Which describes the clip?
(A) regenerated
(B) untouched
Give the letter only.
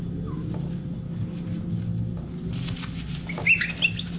B